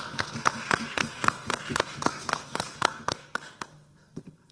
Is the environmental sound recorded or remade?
remade